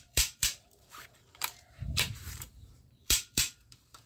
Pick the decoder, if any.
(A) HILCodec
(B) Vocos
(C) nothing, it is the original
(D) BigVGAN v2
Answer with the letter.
D